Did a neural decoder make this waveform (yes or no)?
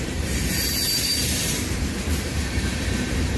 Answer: yes